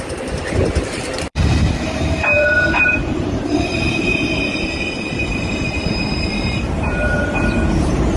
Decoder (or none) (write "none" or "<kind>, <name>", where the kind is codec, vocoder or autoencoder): vocoder, BigVGAN v2